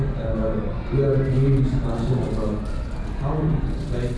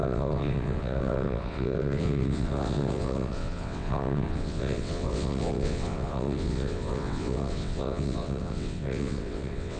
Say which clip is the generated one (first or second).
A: second